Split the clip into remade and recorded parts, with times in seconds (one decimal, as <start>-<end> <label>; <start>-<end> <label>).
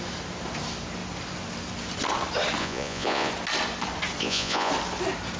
0.0-2.6 recorded; 2.6-3.3 remade; 3.3-4.2 recorded; 4.2-4.7 remade; 4.7-5.4 recorded